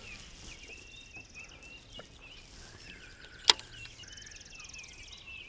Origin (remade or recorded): recorded